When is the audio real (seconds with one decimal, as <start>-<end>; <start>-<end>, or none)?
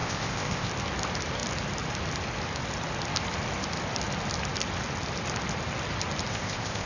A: 0.7-6.3